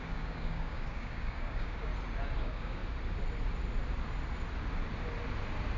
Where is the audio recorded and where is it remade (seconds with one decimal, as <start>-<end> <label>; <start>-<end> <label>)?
0.0-1.9 remade; 1.9-2.4 recorded; 2.4-2.8 remade; 2.8-5.8 recorded